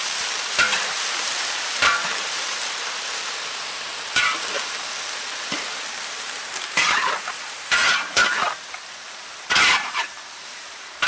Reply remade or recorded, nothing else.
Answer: remade